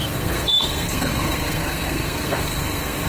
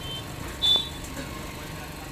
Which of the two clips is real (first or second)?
second